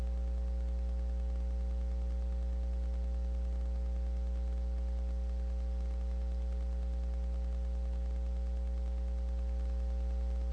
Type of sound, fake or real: real